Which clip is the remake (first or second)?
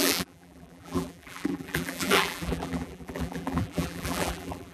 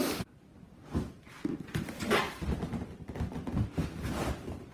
first